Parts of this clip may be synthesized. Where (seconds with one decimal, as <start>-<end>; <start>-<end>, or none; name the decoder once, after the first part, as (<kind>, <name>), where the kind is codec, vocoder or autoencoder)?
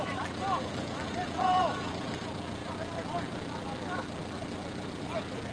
0.0-5.5 (vocoder, BigVGAN v2)